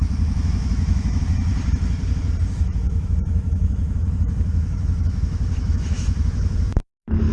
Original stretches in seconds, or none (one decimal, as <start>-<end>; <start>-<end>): 1.5-2.5